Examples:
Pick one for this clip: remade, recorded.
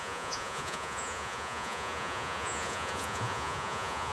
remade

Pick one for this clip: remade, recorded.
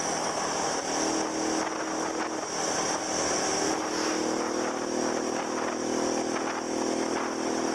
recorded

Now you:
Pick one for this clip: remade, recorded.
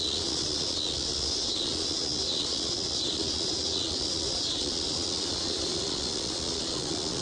remade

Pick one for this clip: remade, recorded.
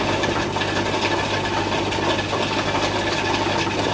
recorded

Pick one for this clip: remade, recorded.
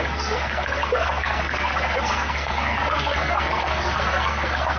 remade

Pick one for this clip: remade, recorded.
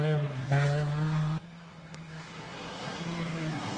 remade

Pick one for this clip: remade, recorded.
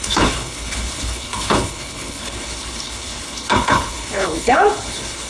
remade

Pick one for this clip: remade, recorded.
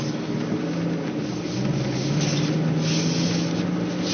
recorded